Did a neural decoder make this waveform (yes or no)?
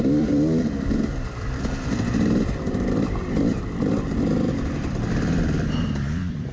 yes